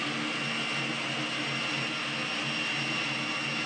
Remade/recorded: recorded